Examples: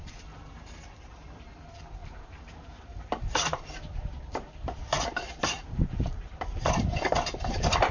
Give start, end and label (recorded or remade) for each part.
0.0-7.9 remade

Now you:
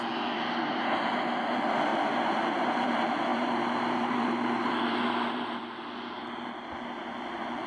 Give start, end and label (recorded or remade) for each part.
0.0-1.9 recorded; 1.9-2.9 remade; 2.9-3.3 recorded; 3.3-5.6 remade; 5.6-7.7 recorded